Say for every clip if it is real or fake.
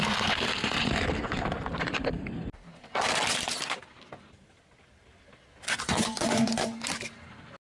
real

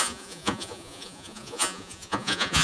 fake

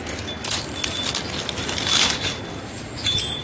real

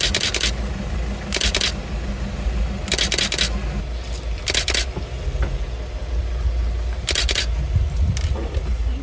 real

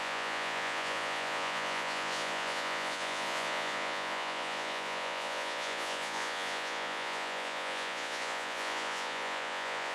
fake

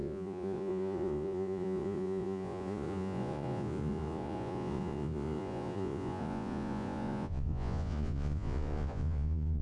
fake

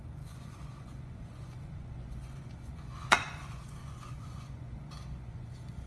fake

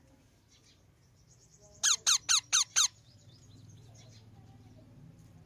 real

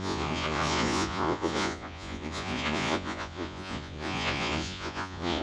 fake